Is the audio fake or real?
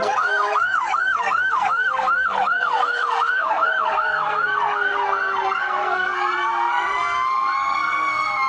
fake